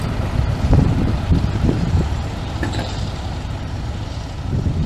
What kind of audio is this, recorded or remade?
remade